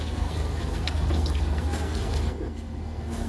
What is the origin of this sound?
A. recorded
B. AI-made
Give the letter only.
B